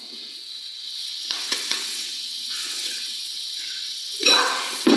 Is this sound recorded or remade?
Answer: remade